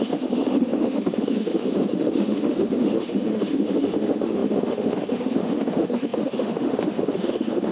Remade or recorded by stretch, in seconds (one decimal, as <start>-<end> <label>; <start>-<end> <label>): 0.0-7.7 remade